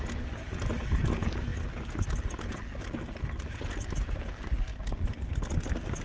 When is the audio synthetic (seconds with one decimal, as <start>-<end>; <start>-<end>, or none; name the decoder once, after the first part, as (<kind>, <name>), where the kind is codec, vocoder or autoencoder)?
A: none

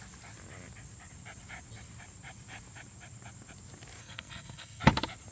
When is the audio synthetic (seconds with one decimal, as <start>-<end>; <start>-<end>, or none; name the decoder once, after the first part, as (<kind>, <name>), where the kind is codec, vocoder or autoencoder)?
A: 4.0-4.8 (codec, SNAC)